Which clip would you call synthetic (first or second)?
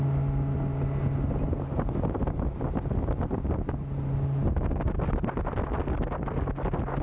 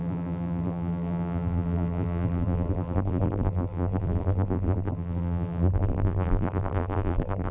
second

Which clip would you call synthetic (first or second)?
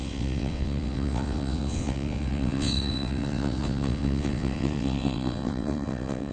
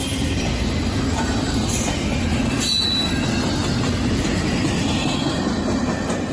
first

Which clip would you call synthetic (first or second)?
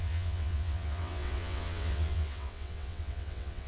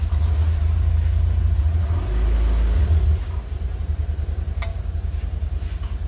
first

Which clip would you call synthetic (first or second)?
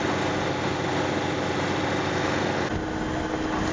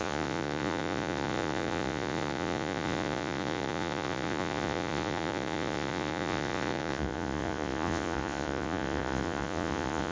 second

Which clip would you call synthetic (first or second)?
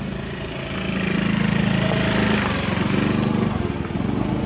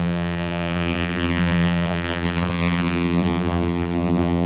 second